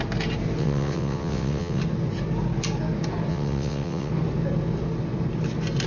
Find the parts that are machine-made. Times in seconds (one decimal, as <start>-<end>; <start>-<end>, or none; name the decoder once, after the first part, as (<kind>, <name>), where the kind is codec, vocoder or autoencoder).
0.6-1.8 (vocoder, WaveNeXt); 3.3-4.1

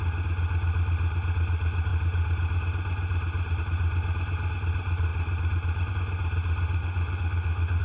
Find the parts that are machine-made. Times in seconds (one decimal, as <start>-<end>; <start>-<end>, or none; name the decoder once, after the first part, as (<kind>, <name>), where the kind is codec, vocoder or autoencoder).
6.8-7.8 (autoencoder, DAC-VAE)